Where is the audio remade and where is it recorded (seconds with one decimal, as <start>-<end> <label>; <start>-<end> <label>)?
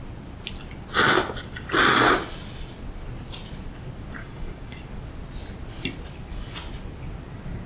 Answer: 0.0-4.2 recorded; 4.2-4.8 remade; 4.8-7.7 recorded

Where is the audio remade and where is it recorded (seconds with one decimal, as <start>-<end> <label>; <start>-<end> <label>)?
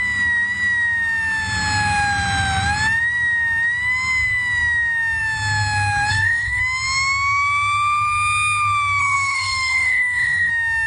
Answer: 0.0-6.1 recorded; 6.1-6.6 remade; 6.6-9.0 recorded; 9.0-10.5 remade; 10.5-10.9 recorded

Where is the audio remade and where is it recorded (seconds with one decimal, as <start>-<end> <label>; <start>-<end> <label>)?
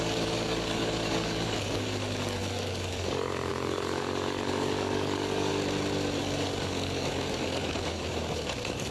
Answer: 0.0-5.5 remade; 5.5-6.2 recorded; 6.2-8.9 remade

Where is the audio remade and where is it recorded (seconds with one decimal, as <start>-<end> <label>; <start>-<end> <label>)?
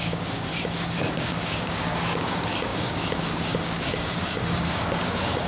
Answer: 0.0-0.5 remade; 0.5-1.1 recorded; 1.1-5.5 remade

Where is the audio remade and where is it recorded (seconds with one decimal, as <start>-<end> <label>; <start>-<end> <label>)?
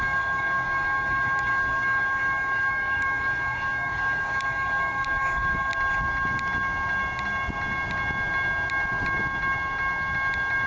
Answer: 0.0-5.7 remade; 5.7-10.7 recorded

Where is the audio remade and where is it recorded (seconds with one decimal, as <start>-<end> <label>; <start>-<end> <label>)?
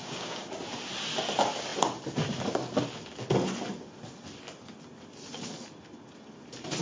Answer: 0.0-0.5 remade; 0.5-6.8 recorded